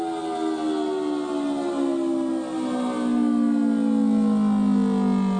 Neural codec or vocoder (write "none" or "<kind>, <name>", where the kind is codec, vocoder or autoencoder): none